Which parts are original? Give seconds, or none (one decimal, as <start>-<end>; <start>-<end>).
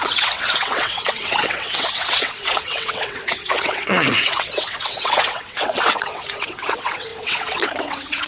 none